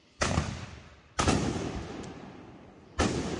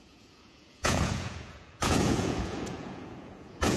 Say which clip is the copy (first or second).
second